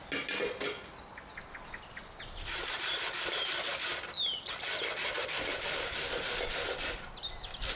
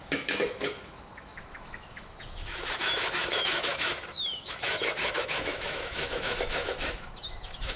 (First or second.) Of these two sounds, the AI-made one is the second